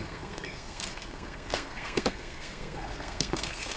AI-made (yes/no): yes